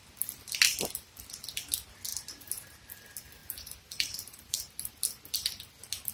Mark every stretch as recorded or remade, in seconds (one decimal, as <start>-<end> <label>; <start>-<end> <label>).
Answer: 0.0-2.1 recorded; 2.1-2.9 remade; 2.9-3.4 recorded; 3.4-5.0 remade; 5.0-6.1 recorded